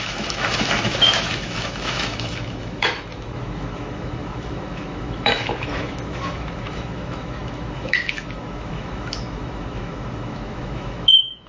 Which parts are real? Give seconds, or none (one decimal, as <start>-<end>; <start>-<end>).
none

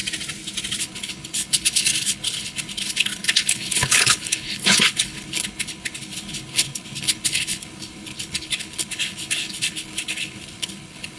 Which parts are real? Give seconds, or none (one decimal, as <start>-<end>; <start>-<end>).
0.0-0.8